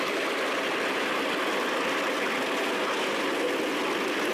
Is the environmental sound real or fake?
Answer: real